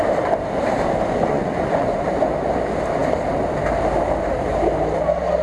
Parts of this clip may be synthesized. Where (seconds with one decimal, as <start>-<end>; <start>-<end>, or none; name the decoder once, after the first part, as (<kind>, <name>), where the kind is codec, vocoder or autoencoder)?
1.3-2.1 (vocoder, Vocos)